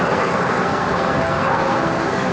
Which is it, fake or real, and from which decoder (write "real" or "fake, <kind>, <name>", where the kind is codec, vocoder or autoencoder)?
fake, codec, SNAC